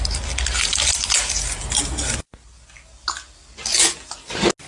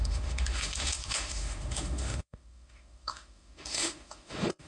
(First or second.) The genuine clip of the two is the first